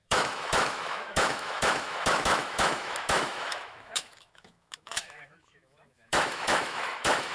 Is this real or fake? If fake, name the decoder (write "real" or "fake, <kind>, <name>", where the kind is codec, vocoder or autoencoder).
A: fake, autoencoder, DAC-VAE